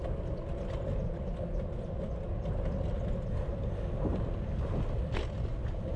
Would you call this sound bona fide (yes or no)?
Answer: yes